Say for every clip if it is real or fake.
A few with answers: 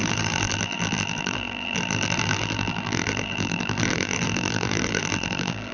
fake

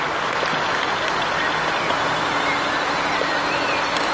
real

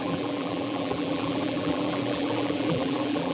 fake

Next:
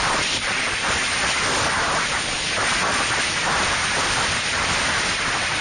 fake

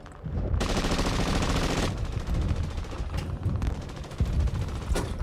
fake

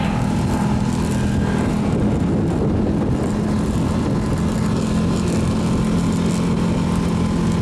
real